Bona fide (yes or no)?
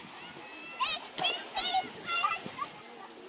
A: yes